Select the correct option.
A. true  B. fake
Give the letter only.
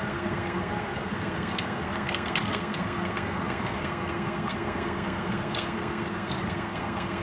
B